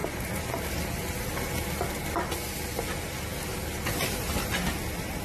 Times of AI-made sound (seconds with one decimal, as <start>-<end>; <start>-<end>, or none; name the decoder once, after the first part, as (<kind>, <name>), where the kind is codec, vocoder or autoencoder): none